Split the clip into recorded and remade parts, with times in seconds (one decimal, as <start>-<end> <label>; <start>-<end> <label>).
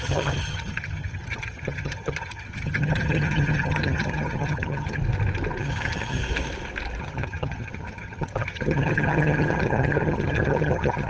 0.0-5.0 remade; 5.0-5.6 recorded; 5.6-6.2 remade; 6.2-7.0 recorded; 7.0-11.1 remade